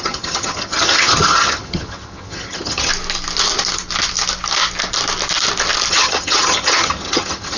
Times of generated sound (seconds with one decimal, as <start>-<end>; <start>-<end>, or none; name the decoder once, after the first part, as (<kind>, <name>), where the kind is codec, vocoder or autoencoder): 0.0-2.9 (vocoder, HiFi-GAN); 5.9-7.6